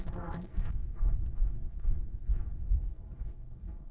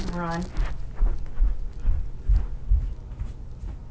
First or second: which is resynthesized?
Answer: first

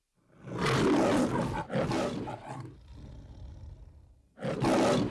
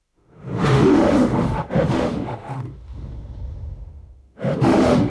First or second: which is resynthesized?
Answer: second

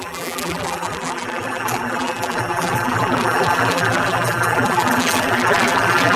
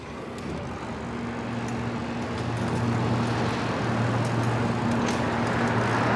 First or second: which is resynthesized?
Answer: first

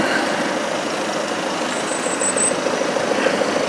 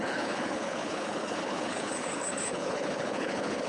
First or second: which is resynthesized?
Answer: second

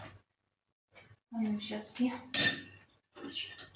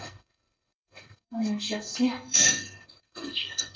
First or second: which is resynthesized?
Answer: second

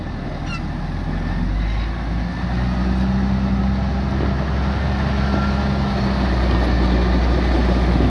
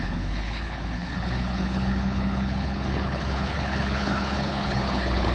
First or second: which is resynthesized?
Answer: second